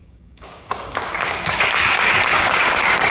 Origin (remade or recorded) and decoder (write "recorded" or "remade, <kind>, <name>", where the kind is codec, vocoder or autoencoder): remade, codec, DAC